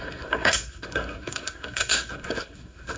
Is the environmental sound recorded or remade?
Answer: remade